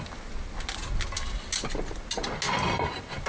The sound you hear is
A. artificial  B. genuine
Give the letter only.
B